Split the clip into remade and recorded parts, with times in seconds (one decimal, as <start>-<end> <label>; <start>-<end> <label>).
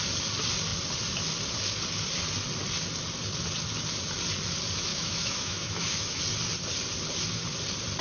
0.0-4.9 recorded; 4.9-6.2 remade; 6.2-8.0 recorded